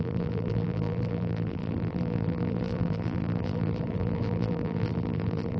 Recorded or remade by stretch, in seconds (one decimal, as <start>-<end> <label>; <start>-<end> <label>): 0.0-5.6 remade